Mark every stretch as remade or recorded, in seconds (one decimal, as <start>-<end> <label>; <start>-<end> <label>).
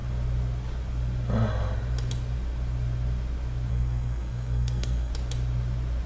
0.0-3.7 recorded; 3.7-5.1 remade; 5.1-6.1 recorded